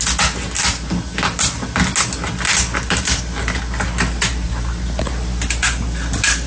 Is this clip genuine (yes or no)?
yes